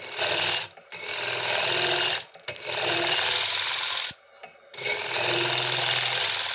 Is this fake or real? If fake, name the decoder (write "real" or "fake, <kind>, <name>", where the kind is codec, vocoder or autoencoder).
real